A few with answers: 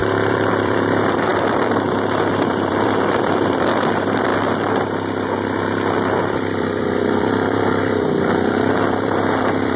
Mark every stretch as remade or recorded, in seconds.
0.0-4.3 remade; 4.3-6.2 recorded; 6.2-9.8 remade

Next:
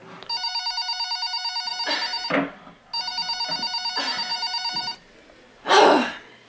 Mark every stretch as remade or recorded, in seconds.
0.0-4.3 recorded; 4.3-5.7 remade; 5.7-6.5 recorded

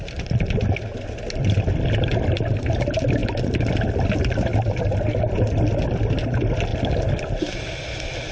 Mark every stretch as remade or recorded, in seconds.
0.0-8.3 recorded

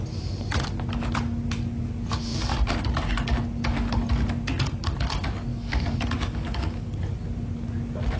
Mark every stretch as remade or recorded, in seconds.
0.0-5.5 recorded; 5.5-7.0 remade; 7.0-8.2 recorded

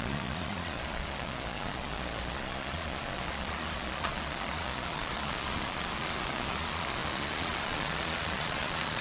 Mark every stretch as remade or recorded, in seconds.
0.0-9.0 remade